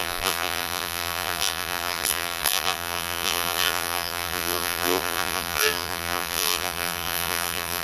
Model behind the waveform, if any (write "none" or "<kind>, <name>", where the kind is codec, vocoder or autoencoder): vocoder, BigVGAN v2